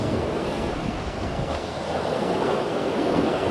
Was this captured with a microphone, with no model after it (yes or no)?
no